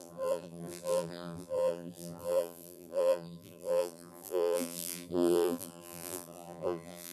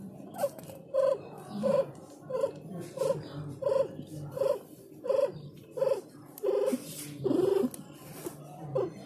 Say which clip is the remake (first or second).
first